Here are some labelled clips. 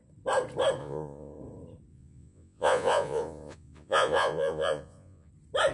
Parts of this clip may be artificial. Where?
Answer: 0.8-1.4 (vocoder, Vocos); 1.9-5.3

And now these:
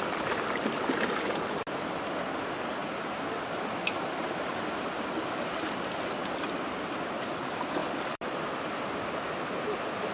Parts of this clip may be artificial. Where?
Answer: none

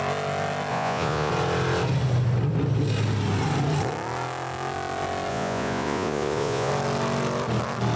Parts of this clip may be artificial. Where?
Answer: 0.7-1.3 (vocoder, Vocos); 5.3-6.7

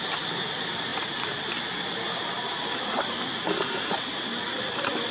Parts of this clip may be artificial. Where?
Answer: none

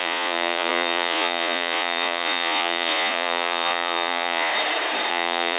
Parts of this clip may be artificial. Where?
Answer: 0.0-4.5 (vocoder, Vocos); 5.1-5.6

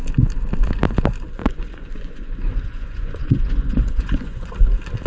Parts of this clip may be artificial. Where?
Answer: 1.4-4.5 (vocoder, Vocos)